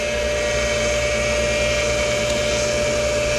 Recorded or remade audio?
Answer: recorded